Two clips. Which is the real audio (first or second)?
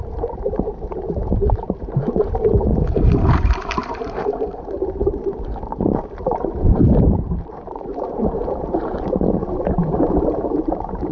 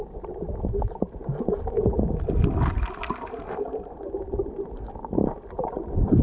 second